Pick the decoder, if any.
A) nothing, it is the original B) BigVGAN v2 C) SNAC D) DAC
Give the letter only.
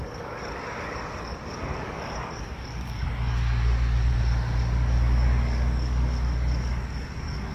D